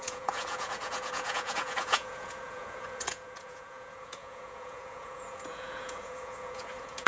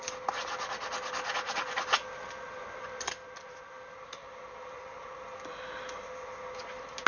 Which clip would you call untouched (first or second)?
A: second